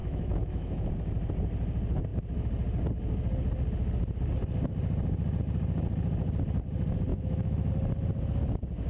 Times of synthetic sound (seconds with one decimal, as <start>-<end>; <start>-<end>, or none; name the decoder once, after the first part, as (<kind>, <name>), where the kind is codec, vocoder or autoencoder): 0.0-0.9 (autoencoder, DAC-VAE); 7.1-7.7